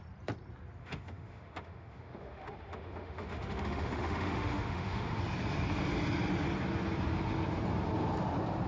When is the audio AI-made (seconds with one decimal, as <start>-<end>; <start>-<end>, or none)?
0.8-5.2